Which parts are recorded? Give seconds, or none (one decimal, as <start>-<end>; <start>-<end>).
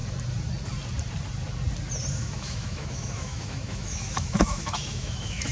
0.0-2.1